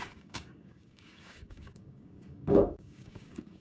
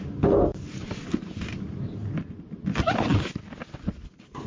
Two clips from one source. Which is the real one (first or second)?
second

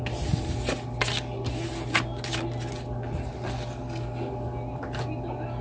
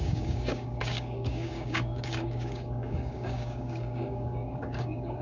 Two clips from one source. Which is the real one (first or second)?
first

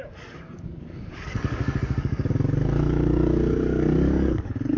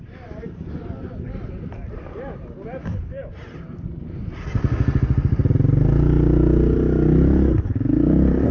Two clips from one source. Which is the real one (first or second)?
second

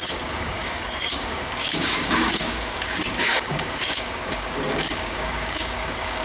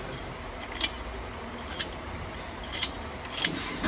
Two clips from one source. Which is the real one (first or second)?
second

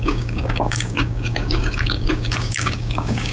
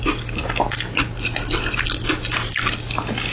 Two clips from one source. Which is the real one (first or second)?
second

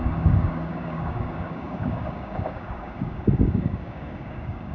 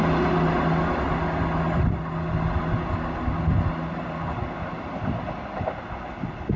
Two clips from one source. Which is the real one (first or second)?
second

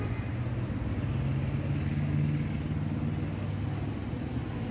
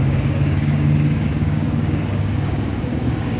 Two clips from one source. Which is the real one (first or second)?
first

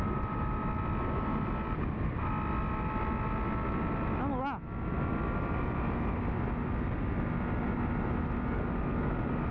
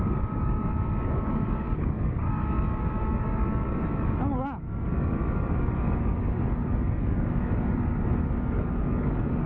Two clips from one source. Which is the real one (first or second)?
first